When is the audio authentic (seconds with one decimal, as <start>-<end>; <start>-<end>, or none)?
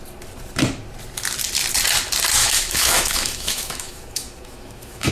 0.0-2.4